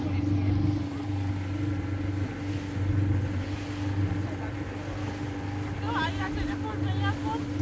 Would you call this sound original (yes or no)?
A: yes